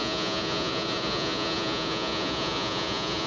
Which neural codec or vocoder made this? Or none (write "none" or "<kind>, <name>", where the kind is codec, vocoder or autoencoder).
vocoder, Vocos